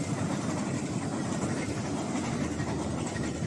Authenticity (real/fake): real